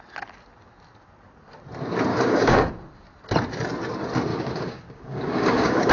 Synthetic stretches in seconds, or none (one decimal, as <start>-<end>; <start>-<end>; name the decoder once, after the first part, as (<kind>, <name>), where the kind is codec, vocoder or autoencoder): 2.1-2.7 (codec, DAC); 4.3-5.9